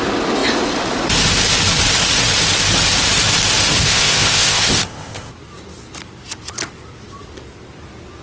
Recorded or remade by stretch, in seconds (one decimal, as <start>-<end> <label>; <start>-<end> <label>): 0.0-3.8 recorded; 3.8-5.3 remade; 5.3-8.2 recorded